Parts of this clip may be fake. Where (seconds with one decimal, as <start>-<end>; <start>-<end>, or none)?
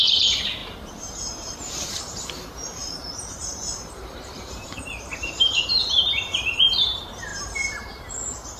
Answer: 0.0-8.6